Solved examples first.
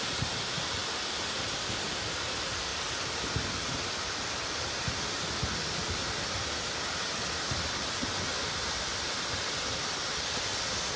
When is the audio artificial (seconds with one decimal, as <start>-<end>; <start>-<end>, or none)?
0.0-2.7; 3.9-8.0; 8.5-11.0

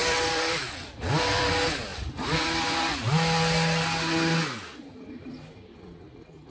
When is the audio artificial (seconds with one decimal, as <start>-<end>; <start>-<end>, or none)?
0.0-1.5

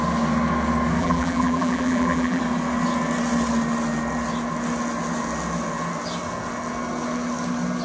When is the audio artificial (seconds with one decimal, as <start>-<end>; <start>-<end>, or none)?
1.0-2.4

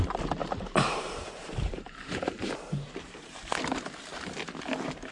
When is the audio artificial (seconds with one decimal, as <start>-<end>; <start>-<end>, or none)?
0.4-3.5